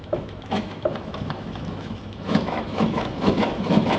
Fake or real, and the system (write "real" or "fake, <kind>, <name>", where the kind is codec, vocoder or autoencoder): fake, autoencoder, DAC-VAE